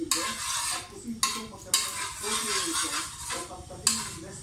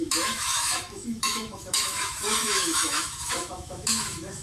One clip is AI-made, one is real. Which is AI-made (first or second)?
second